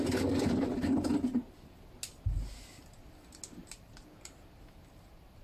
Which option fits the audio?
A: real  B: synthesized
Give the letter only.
A